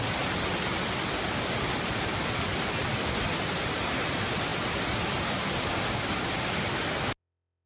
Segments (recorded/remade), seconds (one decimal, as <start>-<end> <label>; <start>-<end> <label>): 0.0-7.7 recorded